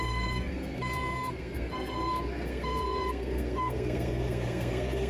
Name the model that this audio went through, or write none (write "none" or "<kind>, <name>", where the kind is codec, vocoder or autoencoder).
codec, SNAC